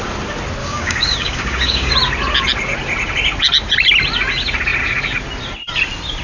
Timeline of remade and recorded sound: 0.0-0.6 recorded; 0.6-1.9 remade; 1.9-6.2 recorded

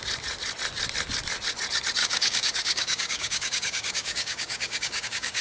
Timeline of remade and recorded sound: 0.0-2.0 recorded; 2.0-5.4 remade

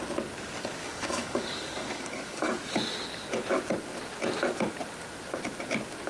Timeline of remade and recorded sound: 0.0-0.8 recorded; 0.8-2.5 remade; 2.5-6.1 recorded

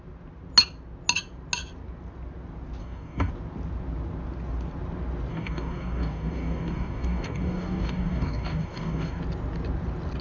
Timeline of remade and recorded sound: 0.0-2.8 recorded; 2.8-3.3 remade; 3.3-5.3 recorded; 5.3-9.2 remade; 9.2-10.2 recorded

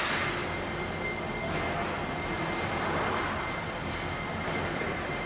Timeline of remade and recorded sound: 0.0-5.3 recorded

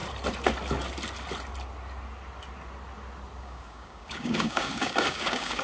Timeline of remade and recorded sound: 0.0-3.4 recorded; 3.4-5.6 remade

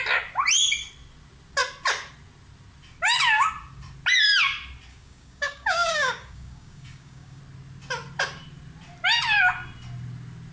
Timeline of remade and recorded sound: 0.0-4.9 recorded; 4.9-7.4 remade; 7.4-10.5 recorded